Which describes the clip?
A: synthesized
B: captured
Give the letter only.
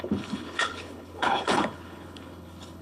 A